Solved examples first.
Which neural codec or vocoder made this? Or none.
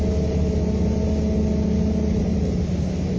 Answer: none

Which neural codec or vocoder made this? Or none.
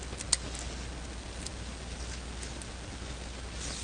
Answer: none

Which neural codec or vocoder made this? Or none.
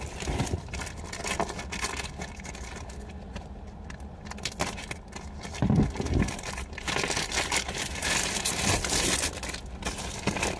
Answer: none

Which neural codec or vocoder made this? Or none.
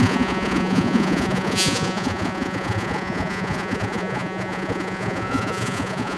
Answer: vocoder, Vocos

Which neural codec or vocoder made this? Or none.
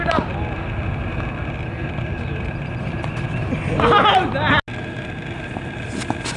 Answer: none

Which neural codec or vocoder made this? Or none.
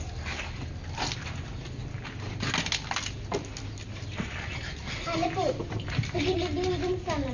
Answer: none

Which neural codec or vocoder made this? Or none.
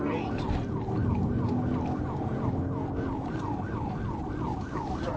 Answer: none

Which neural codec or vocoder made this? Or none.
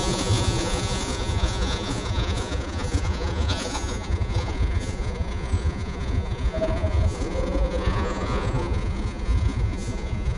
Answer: vocoder, Vocos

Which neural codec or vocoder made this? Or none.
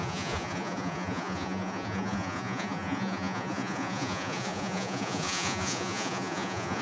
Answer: vocoder, Vocos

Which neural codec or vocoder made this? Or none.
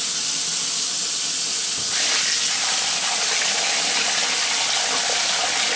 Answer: none